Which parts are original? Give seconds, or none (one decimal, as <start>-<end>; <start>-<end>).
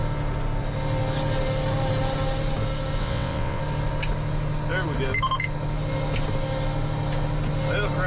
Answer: 0.0-3.0; 3.6-8.1